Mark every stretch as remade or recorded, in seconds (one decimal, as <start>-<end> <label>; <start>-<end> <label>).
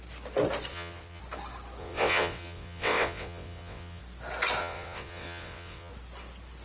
0.0-0.7 recorded; 0.7-1.2 remade; 1.2-1.8 recorded; 1.8-4.0 remade; 4.0-4.6 recorded; 4.6-5.9 remade; 5.9-6.6 recorded